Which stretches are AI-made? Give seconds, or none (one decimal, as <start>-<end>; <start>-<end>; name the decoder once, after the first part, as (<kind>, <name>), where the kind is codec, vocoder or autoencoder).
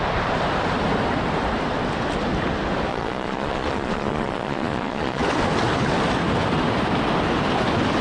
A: 2.9-5.2 (vocoder, Vocos)